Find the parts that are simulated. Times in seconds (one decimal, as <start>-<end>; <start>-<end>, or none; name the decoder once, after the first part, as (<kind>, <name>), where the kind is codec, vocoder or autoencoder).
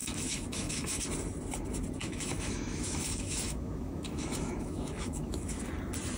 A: 0.0-1.0 (autoencoder, DAC-VAE); 2.0-5.7